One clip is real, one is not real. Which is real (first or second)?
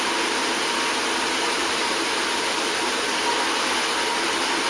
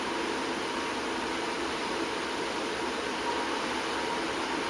first